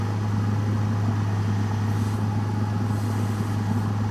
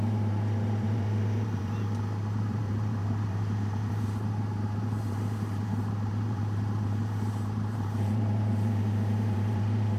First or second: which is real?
first